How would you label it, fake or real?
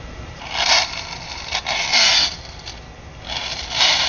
real